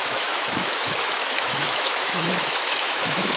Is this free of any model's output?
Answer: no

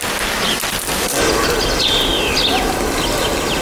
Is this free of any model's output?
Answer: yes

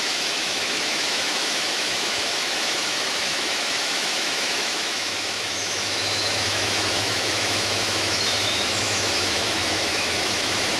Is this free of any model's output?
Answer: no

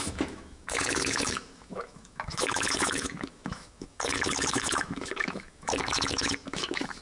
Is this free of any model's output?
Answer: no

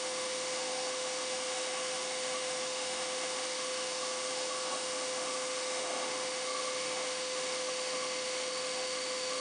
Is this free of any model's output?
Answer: no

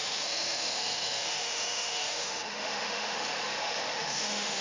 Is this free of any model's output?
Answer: no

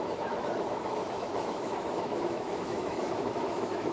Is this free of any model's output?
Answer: no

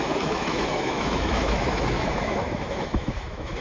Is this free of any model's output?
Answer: no